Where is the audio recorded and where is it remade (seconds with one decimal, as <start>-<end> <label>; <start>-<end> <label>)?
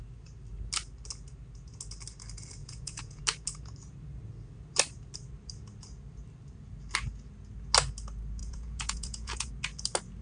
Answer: 0.0-2.6 recorded; 2.6-3.2 remade; 3.2-8.4 recorded; 8.4-9.5 remade; 9.5-10.2 recorded